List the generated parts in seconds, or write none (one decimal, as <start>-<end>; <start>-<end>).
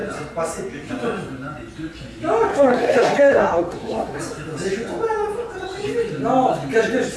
2.5-4.2